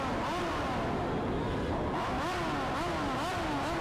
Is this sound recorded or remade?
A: recorded